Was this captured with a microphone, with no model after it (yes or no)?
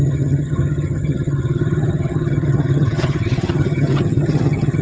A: no